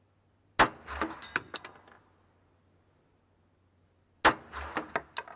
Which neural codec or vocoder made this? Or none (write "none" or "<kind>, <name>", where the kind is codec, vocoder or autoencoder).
none